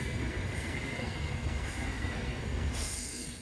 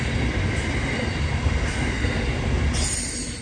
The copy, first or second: first